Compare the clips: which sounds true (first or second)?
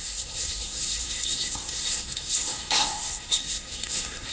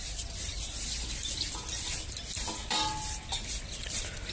second